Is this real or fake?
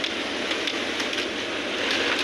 real